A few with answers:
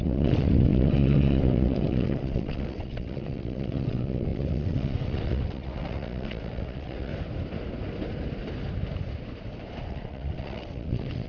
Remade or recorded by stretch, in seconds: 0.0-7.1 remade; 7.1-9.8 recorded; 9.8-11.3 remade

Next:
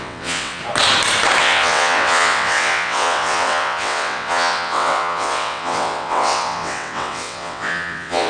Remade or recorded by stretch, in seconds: 0.0-0.6 remade; 0.6-1.4 recorded; 1.4-8.3 remade

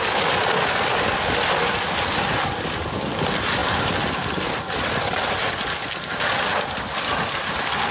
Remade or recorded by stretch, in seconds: 0.0-7.9 recorded

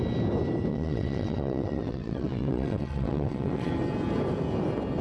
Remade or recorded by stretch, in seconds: 0.0-0.7 recorded; 0.7-3.7 remade; 3.7-5.0 recorded

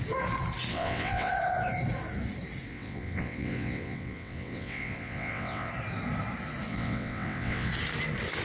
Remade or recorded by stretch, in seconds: 0.0-0.7 recorded; 0.7-1.3 remade; 1.3-2.7 recorded; 2.7-5.7 remade; 5.7-6.7 recorded; 6.7-7.7 remade; 7.7-8.4 recorded

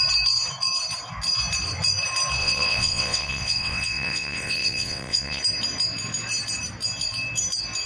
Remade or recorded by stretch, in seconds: 0.0-2.4 recorded; 2.4-5.4 remade; 5.4-7.9 recorded

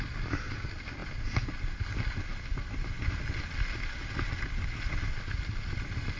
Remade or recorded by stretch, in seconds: 0.0-6.2 recorded